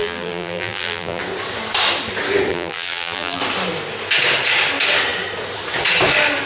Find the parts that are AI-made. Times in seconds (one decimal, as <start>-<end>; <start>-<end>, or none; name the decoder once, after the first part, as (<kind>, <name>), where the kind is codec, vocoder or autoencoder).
0.0-1.2 (vocoder, BigVGAN v2); 2.5-3.4